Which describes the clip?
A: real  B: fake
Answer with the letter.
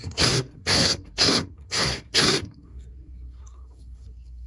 B